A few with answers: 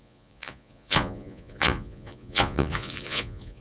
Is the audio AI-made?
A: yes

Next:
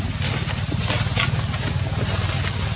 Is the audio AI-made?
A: no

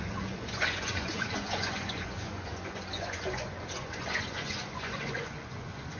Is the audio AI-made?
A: yes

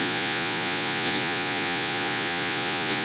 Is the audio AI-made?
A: yes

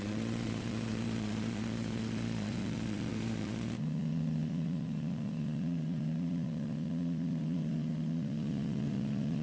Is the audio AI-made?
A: yes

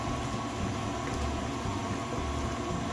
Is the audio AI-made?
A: no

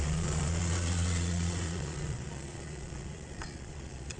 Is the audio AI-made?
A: yes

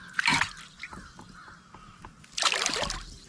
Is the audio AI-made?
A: no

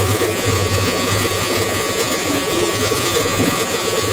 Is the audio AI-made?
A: yes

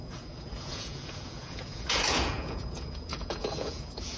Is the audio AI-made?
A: yes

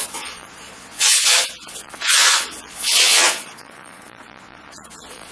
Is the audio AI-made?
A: yes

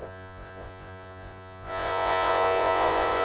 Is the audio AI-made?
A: yes